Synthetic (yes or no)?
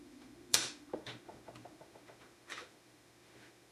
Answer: yes